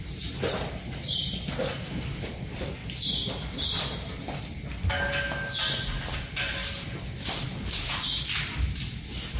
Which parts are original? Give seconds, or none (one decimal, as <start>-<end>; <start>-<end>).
0.0-9.4